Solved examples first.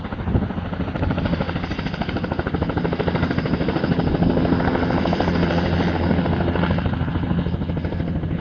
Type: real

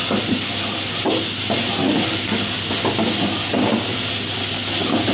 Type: real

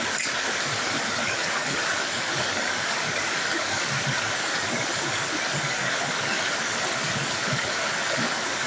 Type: fake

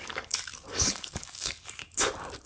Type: fake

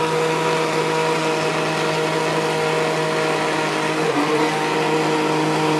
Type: real